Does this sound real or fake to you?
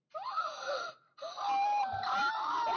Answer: fake